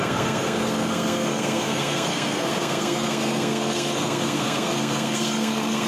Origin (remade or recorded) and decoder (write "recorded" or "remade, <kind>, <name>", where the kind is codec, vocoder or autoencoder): remade, codec, SNAC